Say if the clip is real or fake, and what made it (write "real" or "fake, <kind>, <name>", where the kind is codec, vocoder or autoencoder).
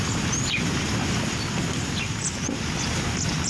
real